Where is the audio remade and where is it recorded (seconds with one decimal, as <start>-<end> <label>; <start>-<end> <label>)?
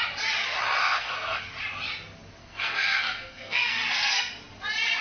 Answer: 0.0-0.8 recorded; 0.8-1.4 remade; 1.4-2.4 recorded; 2.4-4.3 remade; 4.3-5.0 recorded